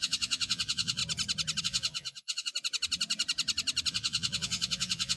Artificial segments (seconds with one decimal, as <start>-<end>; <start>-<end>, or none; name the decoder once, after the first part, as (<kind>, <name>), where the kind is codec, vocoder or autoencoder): 0.0-1.0 (vocoder, Vocos); 1.6-2.5; 3.9-5.2